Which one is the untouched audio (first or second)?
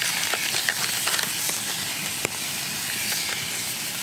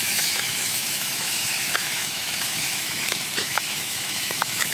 first